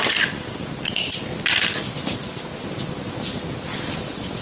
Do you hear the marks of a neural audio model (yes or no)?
no